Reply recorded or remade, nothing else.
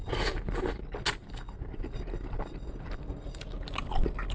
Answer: recorded